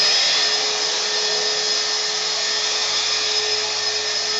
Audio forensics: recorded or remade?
recorded